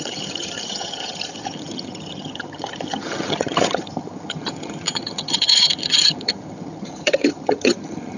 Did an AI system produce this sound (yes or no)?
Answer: yes